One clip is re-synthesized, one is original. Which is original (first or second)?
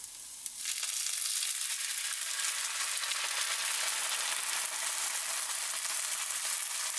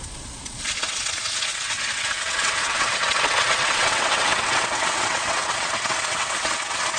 first